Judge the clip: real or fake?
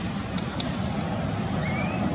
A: real